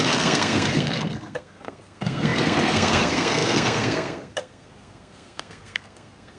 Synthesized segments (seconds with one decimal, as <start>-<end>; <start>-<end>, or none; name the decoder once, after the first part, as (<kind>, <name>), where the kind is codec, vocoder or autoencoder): 0.0-6.4 (codec, SNAC)